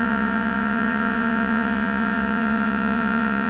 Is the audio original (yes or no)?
no